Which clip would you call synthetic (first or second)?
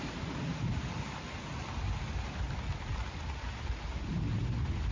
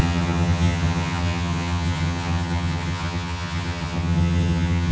second